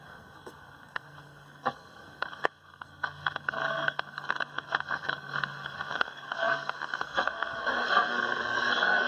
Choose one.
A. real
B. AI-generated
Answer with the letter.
B